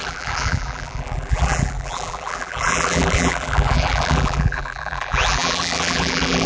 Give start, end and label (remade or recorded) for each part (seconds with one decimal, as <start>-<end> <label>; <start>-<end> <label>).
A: 0.0-6.5 remade